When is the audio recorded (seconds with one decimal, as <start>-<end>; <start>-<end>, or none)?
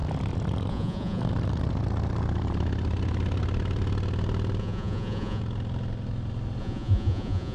0.0-0.7; 1.2-4.6; 5.4-6.6